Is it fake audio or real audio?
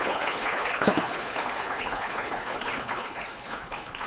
fake